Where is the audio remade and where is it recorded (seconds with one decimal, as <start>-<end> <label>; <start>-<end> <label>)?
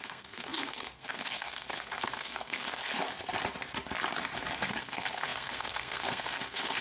0.0-2.8 remade; 2.8-4.7 recorded; 4.7-6.8 remade